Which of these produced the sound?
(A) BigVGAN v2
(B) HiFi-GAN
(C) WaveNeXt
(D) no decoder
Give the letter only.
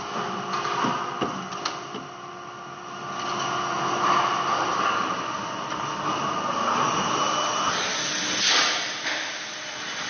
D